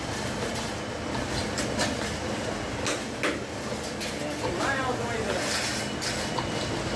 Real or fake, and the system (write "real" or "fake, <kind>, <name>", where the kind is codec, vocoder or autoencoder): real